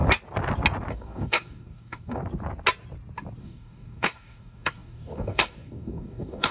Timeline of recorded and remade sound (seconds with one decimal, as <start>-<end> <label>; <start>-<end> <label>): 0.0-0.9 recorded; 0.9-2.2 remade; 2.2-3.4 recorded; 3.4-6.5 remade